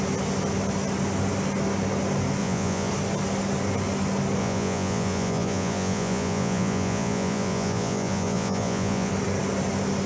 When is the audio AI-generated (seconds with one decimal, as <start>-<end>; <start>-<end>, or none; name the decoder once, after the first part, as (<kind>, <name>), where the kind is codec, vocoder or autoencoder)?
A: 2.4-2.9 (vocoder, Vocos); 4.4-9.1